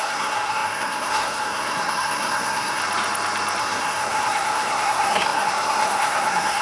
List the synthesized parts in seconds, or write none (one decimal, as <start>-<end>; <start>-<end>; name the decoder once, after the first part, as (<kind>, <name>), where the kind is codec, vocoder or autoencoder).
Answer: 0.0-2.8 (codec, SNAC); 3.6-6.6